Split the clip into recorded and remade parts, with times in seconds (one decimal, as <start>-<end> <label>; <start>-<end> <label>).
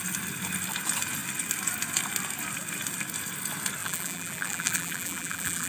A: 0.0-3.8 recorded; 3.8-5.7 remade